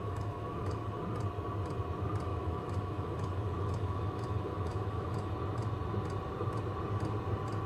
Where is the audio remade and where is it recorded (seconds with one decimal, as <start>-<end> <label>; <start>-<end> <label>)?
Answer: 0.0-1.0 remade; 1.0-2.3 recorded; 2.3-5.3 remade; 5.3-7.7 recorded